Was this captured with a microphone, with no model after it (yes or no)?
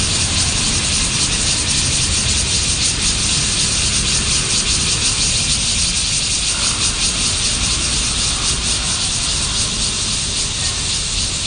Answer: yes